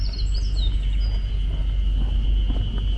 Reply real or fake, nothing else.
real